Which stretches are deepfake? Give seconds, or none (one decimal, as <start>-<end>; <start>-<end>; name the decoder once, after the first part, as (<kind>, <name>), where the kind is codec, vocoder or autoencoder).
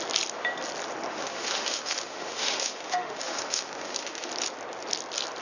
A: 1.1-4.3 (autoencoder, DAC-VAE)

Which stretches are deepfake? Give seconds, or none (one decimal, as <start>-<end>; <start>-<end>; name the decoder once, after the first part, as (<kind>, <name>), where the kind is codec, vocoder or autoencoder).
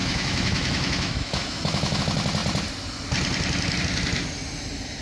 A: 0.0-2.0 (autoencoder, DAC-VAE)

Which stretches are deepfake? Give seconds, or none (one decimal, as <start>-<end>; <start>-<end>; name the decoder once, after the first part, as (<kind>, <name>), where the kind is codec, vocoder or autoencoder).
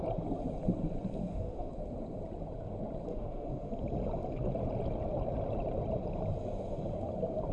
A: 1.2-1.7 (autoencoder, DAC-VAE); 3.1-3.7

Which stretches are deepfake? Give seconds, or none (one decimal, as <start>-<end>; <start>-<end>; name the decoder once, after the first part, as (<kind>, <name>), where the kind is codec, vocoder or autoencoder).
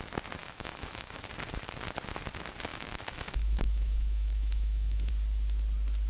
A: 0.4-1.3 (autoencoder, DAC-VAE); 2.7-5.1